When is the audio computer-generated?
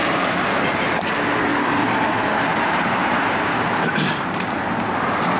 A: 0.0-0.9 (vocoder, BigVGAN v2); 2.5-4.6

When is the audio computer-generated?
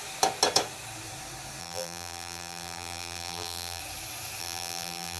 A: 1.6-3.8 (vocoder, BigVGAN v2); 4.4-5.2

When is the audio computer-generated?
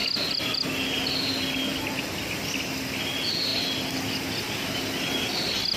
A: 0.0-1.2 (vocoder, BigVGAN v2); 1.7-2.3; 3.5-4.0